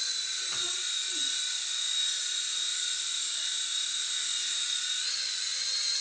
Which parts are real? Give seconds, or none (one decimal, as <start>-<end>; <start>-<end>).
0.0-6.0

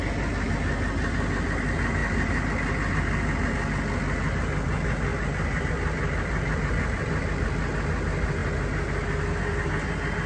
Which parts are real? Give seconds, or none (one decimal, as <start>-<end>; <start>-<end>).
0.0-10.3

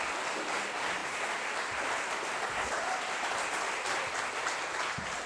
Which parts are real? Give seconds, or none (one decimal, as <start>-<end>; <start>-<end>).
0.0-5.3

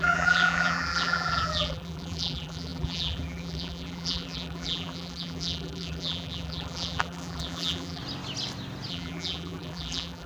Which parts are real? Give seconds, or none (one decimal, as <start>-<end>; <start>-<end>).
8.0-8.9

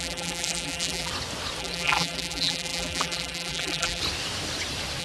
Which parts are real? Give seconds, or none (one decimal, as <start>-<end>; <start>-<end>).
1.1-1.6; 4.0-5.0

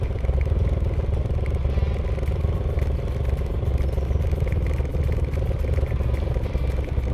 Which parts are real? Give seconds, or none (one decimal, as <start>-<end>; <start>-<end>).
0.0-7.1

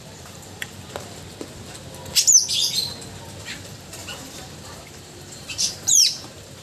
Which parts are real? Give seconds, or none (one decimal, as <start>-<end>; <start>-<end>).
0.8-3.4

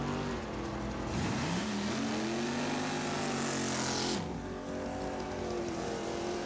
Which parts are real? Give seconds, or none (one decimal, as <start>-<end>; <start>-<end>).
0.0-1.1; 1.7-5.6